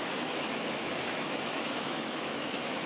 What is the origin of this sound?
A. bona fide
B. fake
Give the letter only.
B